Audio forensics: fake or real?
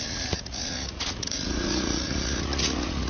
fake